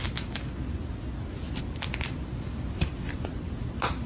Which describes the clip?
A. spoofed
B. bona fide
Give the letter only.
B